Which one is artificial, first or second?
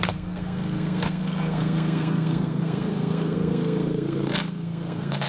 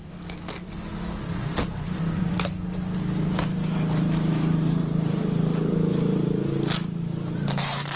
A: first